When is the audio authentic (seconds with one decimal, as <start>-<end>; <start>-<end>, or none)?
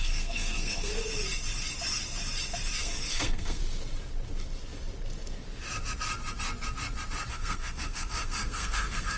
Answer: 0.9-2.8; 3.6-7.3